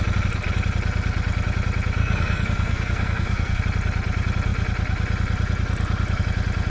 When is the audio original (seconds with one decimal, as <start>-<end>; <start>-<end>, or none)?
0.0-2.0; 3.6-6.7